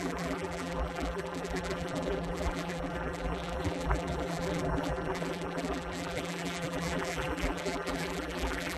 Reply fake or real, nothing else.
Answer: fake